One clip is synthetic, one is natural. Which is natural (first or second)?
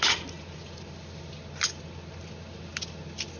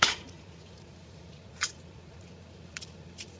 first